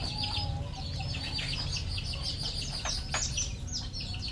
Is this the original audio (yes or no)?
yes